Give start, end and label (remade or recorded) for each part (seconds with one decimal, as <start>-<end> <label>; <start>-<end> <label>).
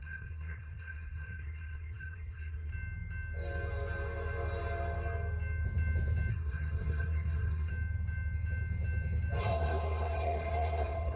0.0-2.7 remade; 2.7-6.3 recorded; 6.3-7.7 remade; 7.7-9.4 recorded; 9.4-11.2 remade